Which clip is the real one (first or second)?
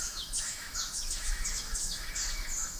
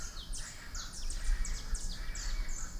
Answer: second